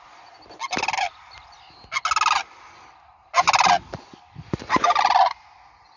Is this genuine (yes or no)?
yes